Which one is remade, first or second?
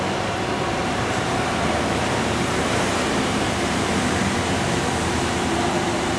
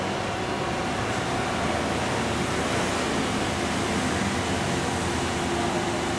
first